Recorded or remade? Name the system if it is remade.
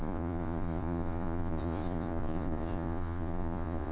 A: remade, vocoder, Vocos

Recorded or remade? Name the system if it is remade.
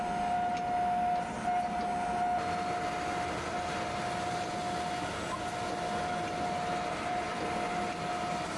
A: recorded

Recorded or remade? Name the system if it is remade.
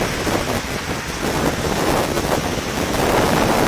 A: recorded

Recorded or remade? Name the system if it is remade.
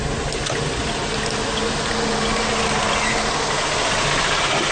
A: recorded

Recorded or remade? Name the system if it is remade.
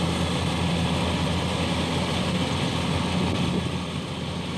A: recorded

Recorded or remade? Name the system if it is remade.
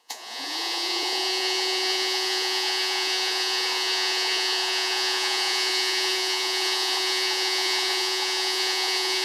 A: remade, vocoder, Vocos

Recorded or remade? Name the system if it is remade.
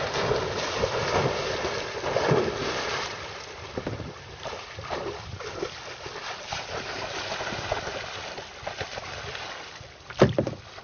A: recorded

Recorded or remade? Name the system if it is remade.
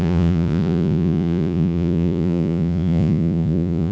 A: remade, vocoder, Vocos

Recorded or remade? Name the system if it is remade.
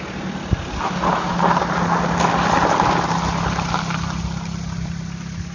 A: recorded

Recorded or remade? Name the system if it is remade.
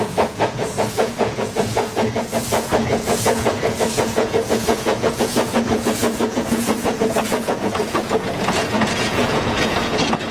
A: remade, vocoder, Vocos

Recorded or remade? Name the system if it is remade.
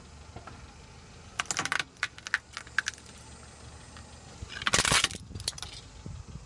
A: recorded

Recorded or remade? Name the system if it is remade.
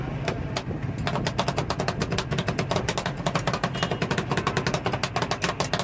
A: recorded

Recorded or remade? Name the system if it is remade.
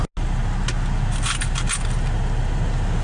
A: recorded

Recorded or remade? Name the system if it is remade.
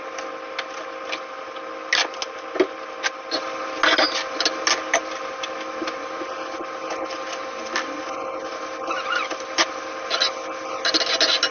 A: recorded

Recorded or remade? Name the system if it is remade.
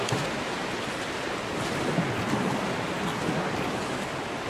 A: recorded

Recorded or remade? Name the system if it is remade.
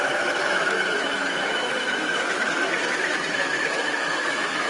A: remade, autoencoder, DAC-VAE